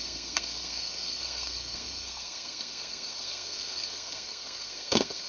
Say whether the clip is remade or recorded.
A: remade